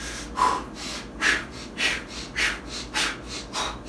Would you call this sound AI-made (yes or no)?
no